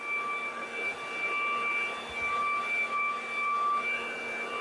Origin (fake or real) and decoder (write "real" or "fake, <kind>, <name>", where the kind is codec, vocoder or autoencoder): real